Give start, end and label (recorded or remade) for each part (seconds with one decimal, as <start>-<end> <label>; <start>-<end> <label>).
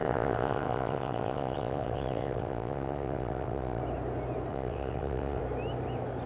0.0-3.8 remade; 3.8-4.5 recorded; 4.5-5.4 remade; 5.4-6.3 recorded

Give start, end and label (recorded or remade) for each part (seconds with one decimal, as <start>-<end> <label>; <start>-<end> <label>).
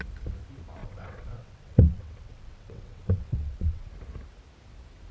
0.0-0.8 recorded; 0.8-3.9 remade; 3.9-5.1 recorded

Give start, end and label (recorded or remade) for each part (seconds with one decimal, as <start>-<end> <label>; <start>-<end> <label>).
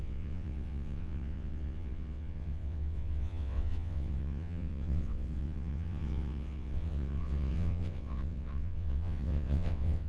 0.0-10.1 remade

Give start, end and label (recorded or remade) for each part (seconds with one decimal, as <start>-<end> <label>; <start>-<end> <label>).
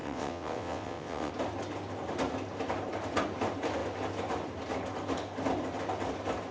0.0-1.3 remade; 1.3-6.5 recorded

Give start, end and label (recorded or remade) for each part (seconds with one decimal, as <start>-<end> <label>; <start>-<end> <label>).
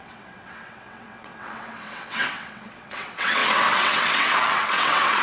0.0-5.2 remade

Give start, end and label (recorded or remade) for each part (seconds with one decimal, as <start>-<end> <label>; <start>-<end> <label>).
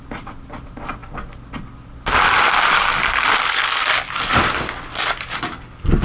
0.0-6.0 recorded